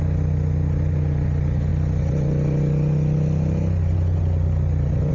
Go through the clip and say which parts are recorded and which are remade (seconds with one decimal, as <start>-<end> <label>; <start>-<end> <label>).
0.0-5.1 recorded